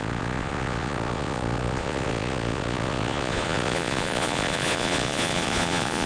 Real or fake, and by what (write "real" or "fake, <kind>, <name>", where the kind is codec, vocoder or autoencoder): fake, vocoder, Vocos